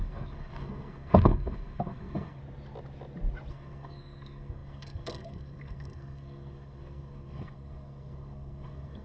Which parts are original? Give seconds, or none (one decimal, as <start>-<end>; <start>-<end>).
2.4-3.5